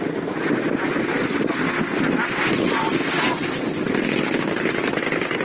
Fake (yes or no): no